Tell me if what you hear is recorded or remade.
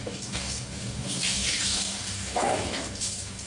remade